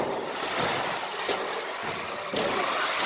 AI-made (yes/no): no